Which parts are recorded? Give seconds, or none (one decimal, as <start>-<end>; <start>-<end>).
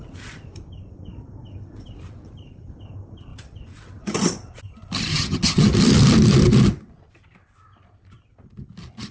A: 0.0-5.1; 5.7-9.1